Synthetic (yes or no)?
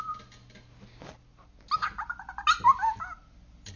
no